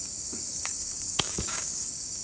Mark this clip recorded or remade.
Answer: remade